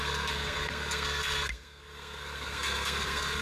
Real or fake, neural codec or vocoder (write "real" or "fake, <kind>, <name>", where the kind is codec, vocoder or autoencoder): fake, codec, SNAC